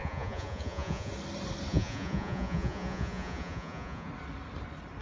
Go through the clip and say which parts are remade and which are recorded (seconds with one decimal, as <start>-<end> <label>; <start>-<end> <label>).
0.0-1.1 remade; 1.1-1.7 recorded; 1.7-4.1 remade; 4.1-5.0 recorded